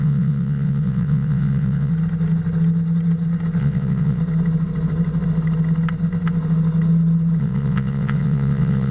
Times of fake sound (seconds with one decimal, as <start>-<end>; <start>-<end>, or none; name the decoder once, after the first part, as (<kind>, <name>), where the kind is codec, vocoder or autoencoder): 0.0-1.9 (vocoder, WaveNeXt); 3.6-4.2; 7.4-8.9